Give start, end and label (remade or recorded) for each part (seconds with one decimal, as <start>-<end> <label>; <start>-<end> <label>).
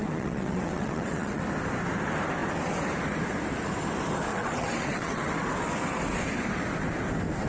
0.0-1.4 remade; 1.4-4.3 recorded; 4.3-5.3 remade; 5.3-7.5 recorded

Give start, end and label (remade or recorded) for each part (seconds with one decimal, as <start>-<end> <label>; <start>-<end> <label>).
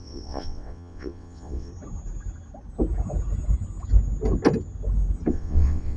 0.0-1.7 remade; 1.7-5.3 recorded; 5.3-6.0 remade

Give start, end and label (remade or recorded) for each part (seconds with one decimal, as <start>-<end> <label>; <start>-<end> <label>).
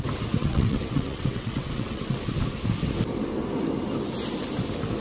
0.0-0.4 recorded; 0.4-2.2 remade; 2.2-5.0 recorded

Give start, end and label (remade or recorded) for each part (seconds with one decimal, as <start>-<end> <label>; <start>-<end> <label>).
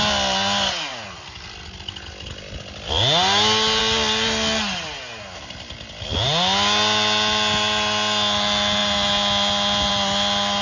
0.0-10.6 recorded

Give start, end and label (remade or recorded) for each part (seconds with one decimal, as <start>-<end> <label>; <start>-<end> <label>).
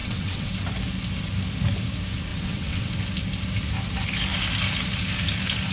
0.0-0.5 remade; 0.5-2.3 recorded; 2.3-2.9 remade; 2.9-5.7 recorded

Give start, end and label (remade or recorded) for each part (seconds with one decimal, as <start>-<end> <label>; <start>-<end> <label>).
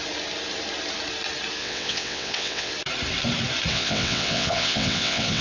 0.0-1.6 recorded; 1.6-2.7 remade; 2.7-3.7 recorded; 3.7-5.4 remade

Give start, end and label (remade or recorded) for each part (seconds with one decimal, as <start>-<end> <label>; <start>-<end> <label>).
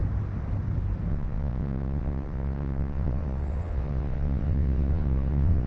0.0-1.1 recorded; 1.1-5.7 remade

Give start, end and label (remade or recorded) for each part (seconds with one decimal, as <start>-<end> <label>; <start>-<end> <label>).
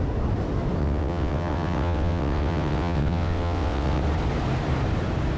0.0-0.8 recorded; 0.8-4.0 remade; 4.0-5.4 recorded